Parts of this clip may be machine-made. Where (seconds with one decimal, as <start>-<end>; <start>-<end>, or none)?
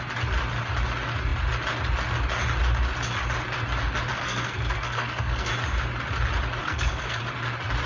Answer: 4.1-5.5; 6.6-7.2